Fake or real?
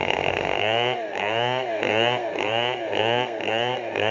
fake